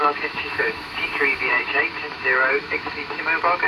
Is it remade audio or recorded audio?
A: remade